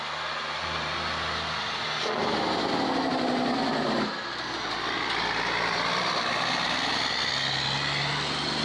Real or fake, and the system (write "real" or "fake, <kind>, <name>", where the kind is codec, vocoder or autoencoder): real